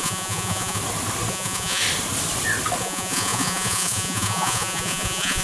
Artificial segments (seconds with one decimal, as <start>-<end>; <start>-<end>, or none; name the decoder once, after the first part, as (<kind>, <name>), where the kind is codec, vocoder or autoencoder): 0.0-0.8 (vocoder, Vocos); 1.3-1.8; 2.8-5.4